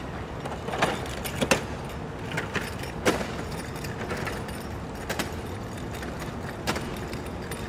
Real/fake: real